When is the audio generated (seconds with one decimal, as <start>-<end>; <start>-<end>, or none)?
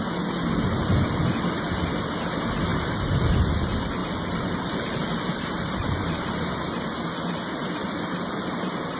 2.7-3.4; 4.0-6.5; 7.8-8.5